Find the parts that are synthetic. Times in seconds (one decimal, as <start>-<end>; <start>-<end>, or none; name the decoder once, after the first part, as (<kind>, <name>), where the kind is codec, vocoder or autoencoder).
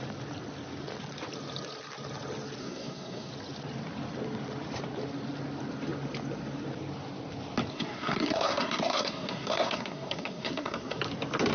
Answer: 2.6-3.3 (codec, SNAC); 7.7-11.0